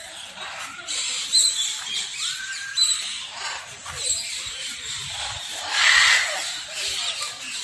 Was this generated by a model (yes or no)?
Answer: yes